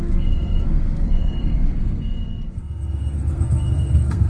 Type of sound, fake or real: fake